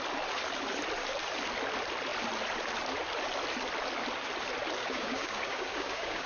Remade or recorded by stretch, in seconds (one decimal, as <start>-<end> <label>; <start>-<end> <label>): 0.0-4.8 recorded; 4.8-6.3 remade